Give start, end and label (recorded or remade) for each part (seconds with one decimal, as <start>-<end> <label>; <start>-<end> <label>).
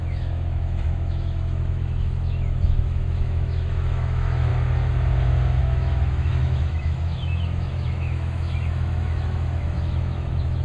0.0-4.5 remade; 4.5-5.6 recorded; 5.6-10.6 remade